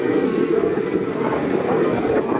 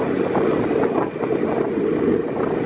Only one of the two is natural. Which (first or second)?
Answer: second